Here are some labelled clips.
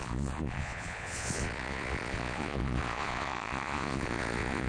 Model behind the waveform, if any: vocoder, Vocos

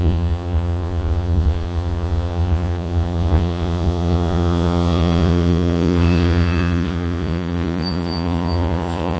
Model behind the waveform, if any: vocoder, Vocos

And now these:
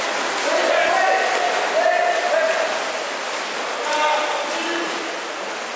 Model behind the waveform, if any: none